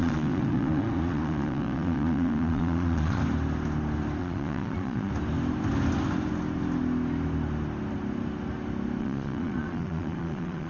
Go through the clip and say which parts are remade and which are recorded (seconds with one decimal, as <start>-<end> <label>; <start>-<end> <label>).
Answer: 0.0-3.2 remade; 3.2-4.2 recorded; 4.2-5.1 remade; 5.1-9.0 recorded; 9.0-10.7 remade